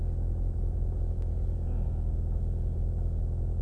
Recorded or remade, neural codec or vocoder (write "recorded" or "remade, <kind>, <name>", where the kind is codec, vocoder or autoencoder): recorded